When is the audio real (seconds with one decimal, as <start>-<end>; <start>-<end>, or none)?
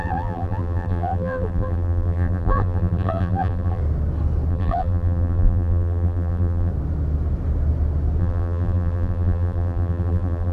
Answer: 3.8-4.5; 6.7-8.2